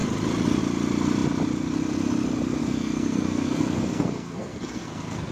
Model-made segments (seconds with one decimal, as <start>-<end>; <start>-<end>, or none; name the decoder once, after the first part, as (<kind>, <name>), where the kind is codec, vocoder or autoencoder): 2.6-5.3 (codec, SNAC)